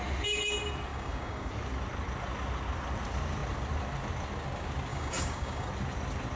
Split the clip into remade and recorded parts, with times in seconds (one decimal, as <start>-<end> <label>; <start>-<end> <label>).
0.0-0.9 recorded; 0.9-1.5 remade; 1.5-4.9 recorded; 4.9-5.7 remade; 5.7-6.4 recorded